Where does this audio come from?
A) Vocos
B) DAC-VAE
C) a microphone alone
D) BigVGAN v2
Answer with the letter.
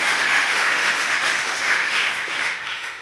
B